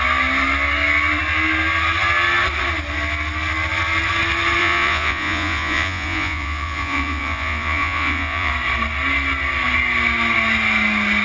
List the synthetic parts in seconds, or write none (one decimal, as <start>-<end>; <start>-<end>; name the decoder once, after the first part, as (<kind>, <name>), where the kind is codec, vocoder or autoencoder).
4.6-8.5 (vocoder, Vocos)